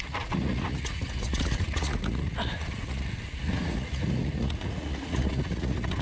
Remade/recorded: remade